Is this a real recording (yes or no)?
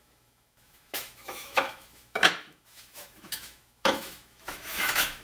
no